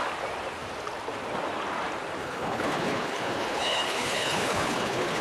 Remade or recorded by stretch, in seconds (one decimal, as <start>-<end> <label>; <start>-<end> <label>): 0.0-2.2 recorded; 2.2-5.2 remade